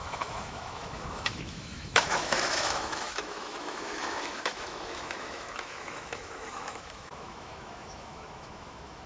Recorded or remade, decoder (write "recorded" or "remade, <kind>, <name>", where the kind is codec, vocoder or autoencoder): remade, autoencoder, DAC-VAE